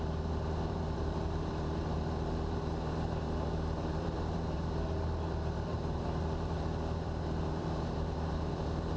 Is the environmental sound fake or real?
fake